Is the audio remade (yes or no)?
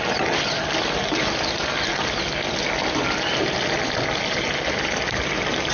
no